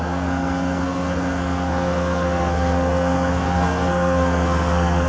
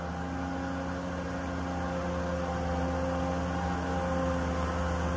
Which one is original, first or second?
second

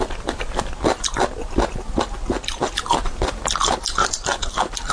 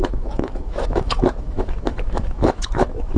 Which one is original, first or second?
first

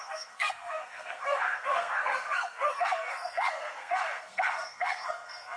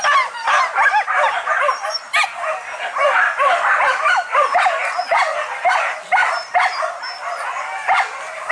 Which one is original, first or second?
second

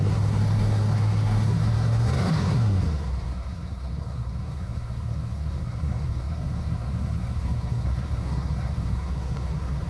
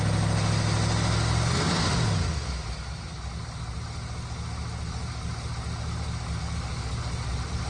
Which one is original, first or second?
second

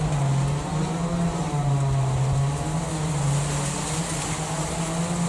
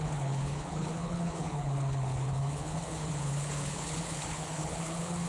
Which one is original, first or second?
first